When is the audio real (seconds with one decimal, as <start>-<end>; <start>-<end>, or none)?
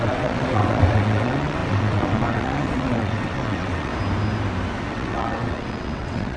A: 3.9-4.9